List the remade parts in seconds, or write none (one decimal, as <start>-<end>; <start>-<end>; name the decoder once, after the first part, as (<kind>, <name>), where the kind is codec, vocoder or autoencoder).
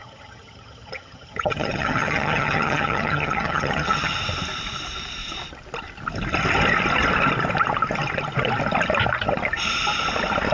0.0-4.2 (vocoder, HiFi-GAN)